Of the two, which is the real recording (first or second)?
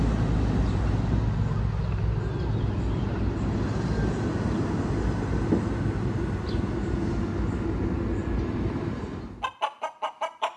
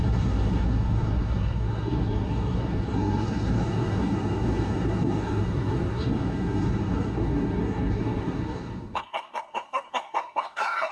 first